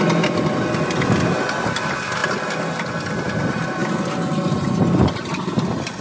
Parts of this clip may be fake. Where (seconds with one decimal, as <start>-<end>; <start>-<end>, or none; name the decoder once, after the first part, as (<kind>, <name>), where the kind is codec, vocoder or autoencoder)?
none